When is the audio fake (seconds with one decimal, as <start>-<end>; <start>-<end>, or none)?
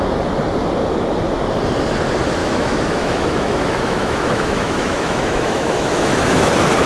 2.4-6.5